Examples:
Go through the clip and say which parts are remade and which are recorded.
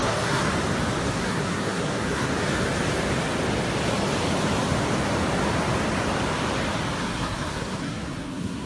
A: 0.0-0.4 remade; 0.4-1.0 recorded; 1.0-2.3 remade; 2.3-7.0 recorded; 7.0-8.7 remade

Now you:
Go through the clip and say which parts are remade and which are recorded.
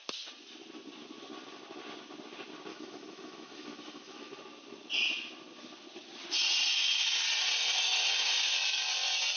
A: 0.0-2.7 recorded; 2.7-4.4 remade; 4.4-9.4 recorded